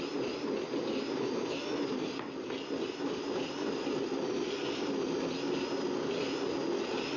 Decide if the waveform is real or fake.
real